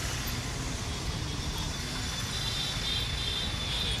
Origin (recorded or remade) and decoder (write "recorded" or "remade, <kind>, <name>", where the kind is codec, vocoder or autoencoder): recorded